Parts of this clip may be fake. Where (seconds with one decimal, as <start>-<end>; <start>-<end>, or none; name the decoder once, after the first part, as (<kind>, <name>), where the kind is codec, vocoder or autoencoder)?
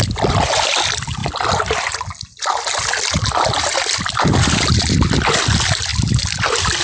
0.0-1.2 (vocoder, BigVGAN v2); 4.4-5.9